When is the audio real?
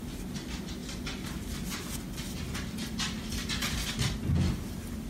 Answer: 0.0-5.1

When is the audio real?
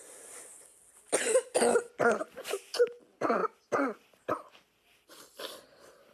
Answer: 0.0-2.2; 2.8-6.1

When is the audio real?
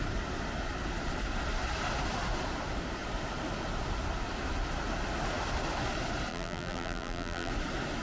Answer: 0.0-6.3; 7.5-8.0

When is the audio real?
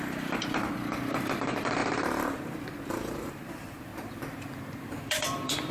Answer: 3.9-4.4